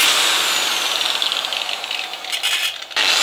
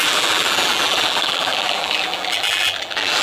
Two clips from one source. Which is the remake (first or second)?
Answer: second